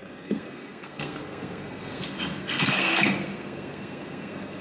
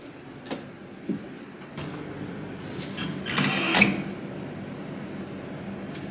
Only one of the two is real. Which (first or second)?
second